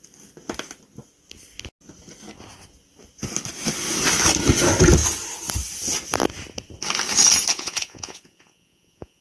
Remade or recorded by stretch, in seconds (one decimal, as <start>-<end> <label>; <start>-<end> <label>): 0.0-7.5 recorded; 7.5-9.2 remade